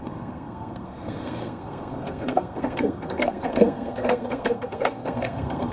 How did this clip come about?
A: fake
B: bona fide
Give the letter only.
A